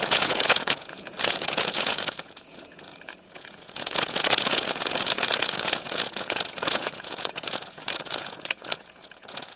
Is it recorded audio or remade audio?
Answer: remade